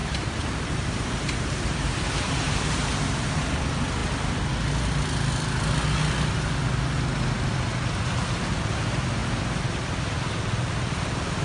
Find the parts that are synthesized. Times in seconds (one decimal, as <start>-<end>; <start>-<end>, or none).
0.0-3.6